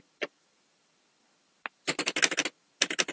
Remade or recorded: recorded